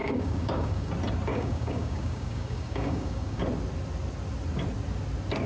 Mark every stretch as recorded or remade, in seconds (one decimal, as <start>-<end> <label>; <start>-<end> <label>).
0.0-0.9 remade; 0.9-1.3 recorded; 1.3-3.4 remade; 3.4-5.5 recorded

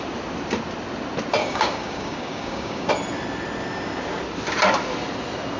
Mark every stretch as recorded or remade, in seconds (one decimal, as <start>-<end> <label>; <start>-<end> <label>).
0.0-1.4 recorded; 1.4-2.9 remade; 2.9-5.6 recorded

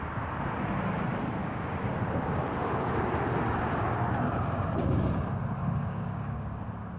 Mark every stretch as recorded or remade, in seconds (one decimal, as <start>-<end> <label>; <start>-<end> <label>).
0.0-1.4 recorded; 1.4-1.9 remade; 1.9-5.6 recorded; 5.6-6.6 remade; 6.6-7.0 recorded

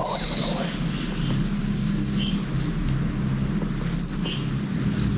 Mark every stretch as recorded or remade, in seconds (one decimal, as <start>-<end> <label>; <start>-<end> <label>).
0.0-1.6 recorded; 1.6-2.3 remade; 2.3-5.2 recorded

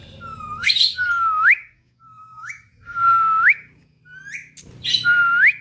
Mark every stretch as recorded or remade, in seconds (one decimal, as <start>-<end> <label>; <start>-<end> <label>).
0.0-0.6 recorded; 0.6-4.0 remade; 4.0-5.6 recorded

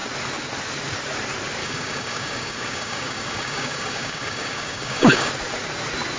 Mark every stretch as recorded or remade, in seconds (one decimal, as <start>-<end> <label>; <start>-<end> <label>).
0.0-1.6 recorded; 1.6-5.3 remade; 5.3-6.2 recorded

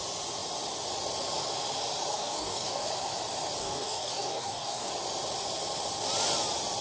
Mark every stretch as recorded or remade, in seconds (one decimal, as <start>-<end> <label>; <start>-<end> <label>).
0.0-2.1 recorded; 2.1-2.9 remade; 2.9-3.6 recorded; 3.6-4.9 remade; 4.9-6.8 recorded

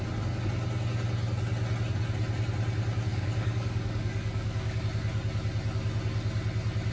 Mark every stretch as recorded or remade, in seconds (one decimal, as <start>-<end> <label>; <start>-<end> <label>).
0.0-3.1 recorded; 3.1-4.8 remade; 4.8-6.9 recorded